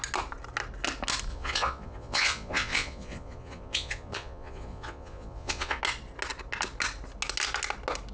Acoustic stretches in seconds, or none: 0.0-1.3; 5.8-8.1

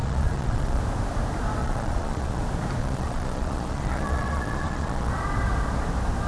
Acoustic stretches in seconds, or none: 0.8-1.6; 2.4-2.8; 5.1-6.3